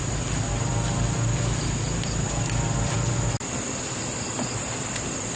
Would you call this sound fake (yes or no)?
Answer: no